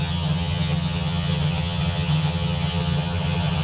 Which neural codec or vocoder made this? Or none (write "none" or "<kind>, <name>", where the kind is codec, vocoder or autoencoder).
vocoder, HiFi-GAN